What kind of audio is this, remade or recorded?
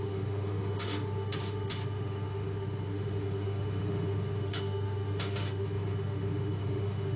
remade